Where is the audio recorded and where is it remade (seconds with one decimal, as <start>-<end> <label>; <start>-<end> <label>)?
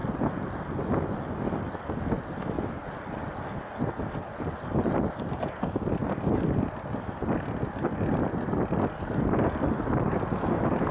0.0-10.9 recorded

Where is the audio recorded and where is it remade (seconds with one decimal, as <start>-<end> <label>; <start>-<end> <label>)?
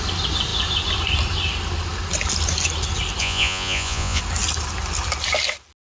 0.0-3.2 recorded; 3.2-4.2 remade; 4.2-5.8 recorded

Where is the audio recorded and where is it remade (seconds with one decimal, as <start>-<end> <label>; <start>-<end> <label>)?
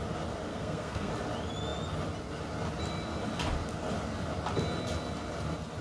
0.0-0.5 recorded; 0.5-1.1 remade; 1.1-5.8 recorded